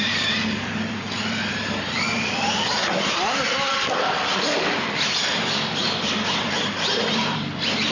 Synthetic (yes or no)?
yes